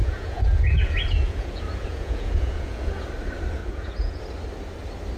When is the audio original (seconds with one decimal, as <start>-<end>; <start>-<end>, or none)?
3.1-3.6; 4.2-5.2